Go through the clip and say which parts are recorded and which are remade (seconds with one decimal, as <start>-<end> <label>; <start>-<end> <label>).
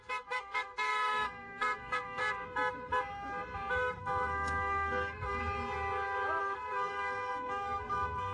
0.0-2.2 remade; 2.2-4.0 recorded; 4.0-5.4 remade; 5.4-6.4 recorded; 6.4-8.3 remade